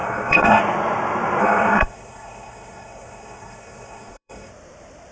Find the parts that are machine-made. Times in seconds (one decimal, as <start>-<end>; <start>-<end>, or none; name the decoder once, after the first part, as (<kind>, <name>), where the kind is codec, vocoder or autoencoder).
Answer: 0.0-0.6 (codec, SNAC); 1.4-4.5